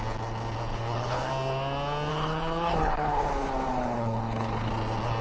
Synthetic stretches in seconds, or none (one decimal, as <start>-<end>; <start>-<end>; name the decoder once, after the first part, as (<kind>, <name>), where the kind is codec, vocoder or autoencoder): 0.7-1.3 (codec, HILCodec); 2.1-3.3; 3.7-4.7